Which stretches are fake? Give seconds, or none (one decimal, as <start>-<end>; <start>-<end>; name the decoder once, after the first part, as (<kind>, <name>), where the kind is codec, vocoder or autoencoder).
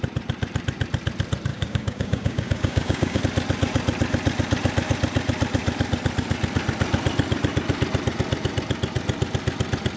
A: 1.5-3.2 (codec, DAC)